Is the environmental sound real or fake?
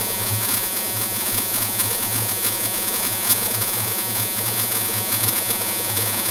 fake